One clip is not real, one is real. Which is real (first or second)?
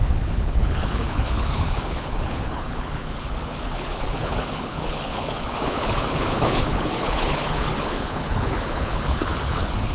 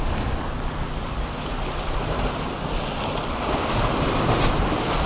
second